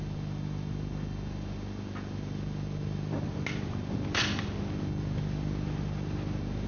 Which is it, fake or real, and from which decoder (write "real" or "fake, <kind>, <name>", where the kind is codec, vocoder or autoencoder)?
real